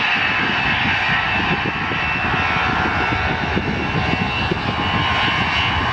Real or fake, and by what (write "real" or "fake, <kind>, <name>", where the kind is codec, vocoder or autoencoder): real